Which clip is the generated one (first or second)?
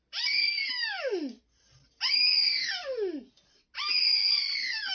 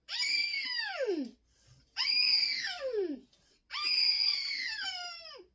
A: second